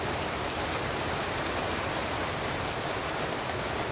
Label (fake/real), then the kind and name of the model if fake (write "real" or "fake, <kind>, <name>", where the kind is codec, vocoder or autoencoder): real